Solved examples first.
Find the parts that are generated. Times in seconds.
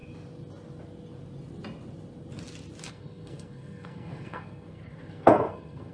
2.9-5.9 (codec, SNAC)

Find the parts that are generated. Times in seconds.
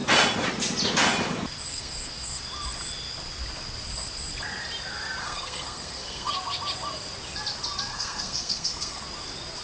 1.7-2.4 (codec, SNAC); 5.2-6.3; 7.9-9.0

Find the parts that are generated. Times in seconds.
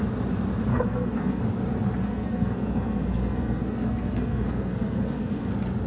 0.7-1.4 (codec, SNAC); 2.0-5.5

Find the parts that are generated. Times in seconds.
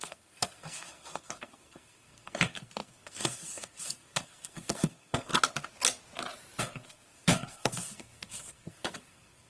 0.0-5.3 (codec, SNAC); 6.6-9.5